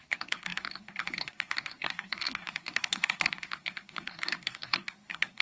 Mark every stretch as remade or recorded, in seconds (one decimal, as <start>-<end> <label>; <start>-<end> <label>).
0.0-5.4 remade